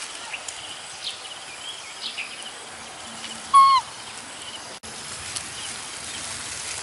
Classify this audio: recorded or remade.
recorded